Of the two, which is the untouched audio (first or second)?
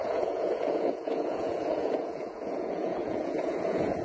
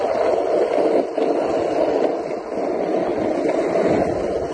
second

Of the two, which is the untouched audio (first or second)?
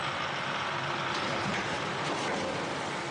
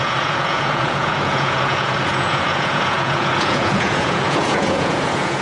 first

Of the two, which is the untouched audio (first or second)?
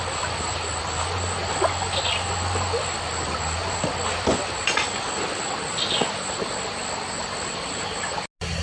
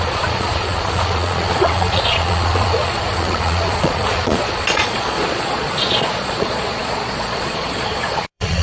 first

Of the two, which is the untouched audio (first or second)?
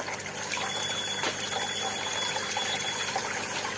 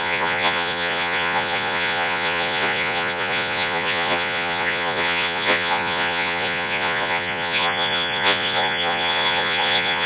first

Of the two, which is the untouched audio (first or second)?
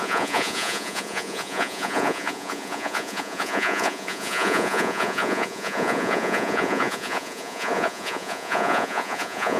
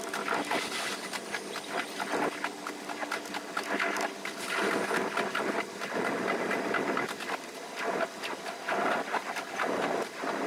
second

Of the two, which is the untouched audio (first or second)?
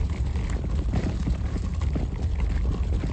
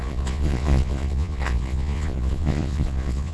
first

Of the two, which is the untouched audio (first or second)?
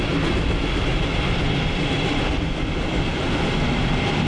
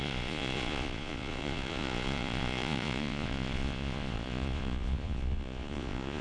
first